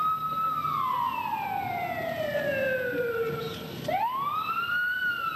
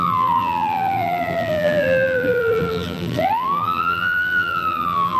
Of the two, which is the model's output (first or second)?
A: second